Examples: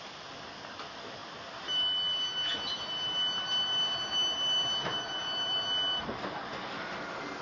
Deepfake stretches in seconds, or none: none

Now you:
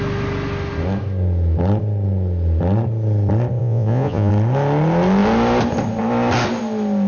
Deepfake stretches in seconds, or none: 3.6-4.3

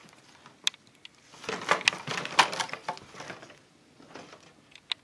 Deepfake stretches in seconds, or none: none

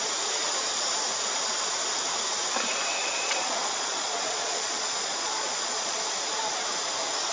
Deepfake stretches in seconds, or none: 3.0-6.0

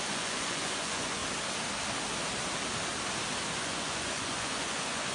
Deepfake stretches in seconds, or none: 0.0-1.2; 3.5-5.1

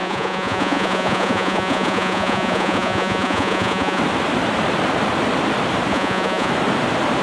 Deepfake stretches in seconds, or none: 0.0-4.0; 5.9-6.5

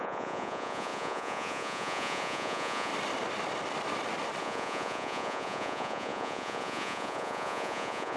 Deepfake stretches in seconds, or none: 0.0-2.9; 4.4-8.2